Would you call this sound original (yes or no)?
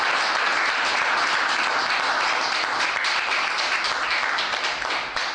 yes